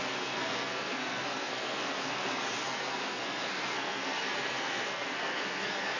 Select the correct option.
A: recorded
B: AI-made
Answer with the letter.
B